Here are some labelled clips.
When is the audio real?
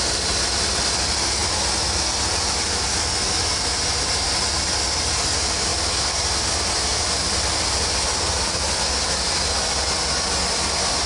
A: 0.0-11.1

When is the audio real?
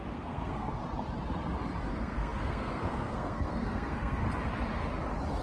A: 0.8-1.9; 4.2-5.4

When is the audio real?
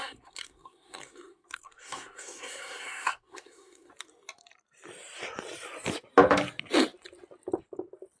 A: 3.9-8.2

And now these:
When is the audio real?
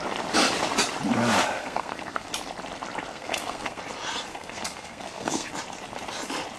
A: 0.0-1.6; 2.3-3.1; 3.8-4.3; 5.5-6.6